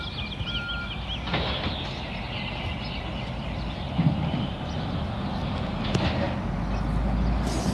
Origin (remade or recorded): recorded